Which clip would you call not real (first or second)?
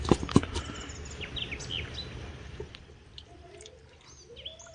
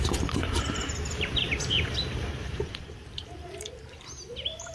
second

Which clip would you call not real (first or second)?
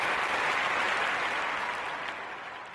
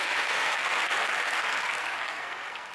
second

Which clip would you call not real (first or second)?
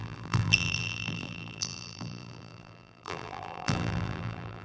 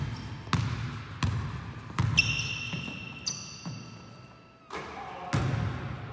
first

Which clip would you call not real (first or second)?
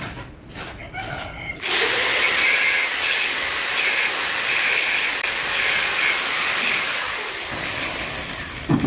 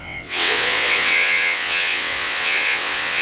second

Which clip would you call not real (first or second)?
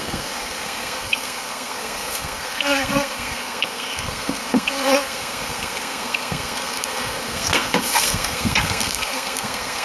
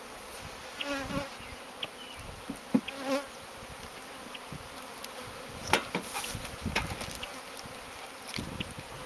first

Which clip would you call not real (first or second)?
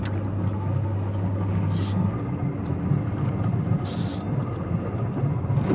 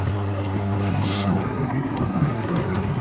second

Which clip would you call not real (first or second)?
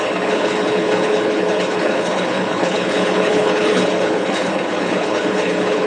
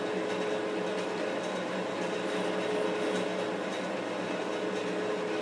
first